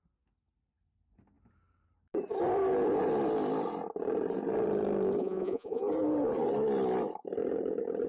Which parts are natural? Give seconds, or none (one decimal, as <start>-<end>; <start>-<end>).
0.0-5.2; 5.8-8.1